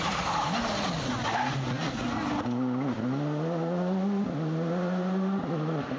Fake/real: real